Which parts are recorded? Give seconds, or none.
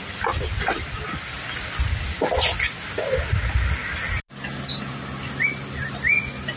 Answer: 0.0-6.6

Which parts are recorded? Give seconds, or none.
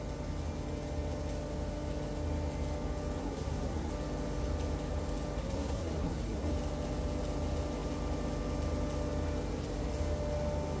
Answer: 0.0-3.2; 3.9-5.4; 6.5-10.8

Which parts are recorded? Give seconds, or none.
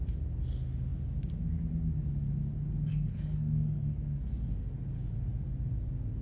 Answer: 0.0-2.9; 4.7-6.2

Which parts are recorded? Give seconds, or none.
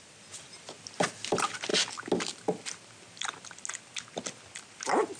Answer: 0.0-5.2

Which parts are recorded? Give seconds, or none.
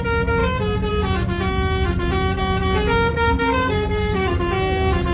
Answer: 0.0-3.1; 4.3-5.1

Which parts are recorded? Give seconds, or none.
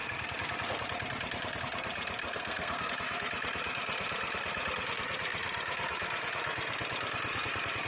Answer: 0.0-2.2; 2.9-7.9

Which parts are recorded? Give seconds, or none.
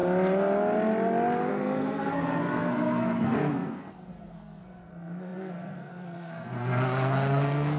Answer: 0.0-1.5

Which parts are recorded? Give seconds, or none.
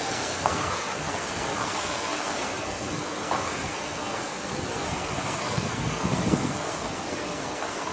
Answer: none